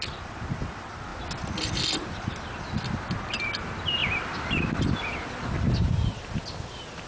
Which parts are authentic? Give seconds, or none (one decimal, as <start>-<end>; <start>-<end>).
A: 0.0-7.1